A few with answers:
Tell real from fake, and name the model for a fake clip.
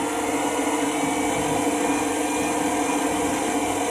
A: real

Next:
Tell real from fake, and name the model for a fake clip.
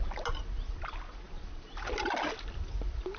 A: real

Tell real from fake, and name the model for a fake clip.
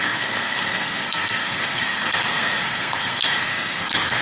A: fake, codec, SNAC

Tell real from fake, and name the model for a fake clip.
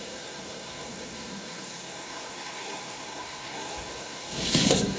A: fake, codec, SNAC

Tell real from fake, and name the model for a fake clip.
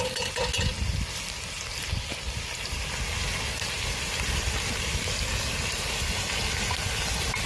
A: real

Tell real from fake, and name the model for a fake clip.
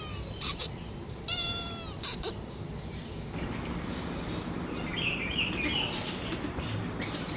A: real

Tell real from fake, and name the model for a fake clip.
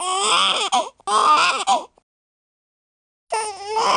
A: real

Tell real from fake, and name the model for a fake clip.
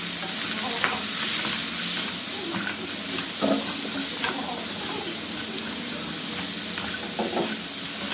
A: real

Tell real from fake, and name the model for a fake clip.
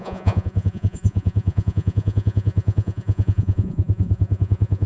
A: fake, vocoder, Vocos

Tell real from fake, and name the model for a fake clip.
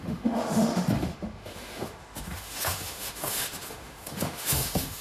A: fake, autoencoder, DAC-VAE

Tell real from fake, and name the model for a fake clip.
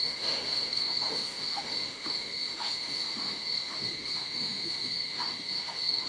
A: fake, autoencoder, DAC-VAE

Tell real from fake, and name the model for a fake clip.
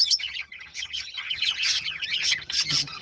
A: fake, vocoder, HiFi-GAN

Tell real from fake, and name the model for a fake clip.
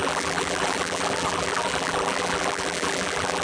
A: fake, vocoder, BigVGAN v2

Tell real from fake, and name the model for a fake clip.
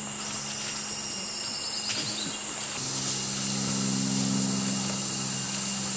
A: real